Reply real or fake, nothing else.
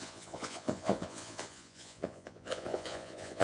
fake